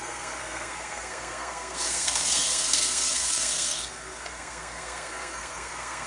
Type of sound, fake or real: fake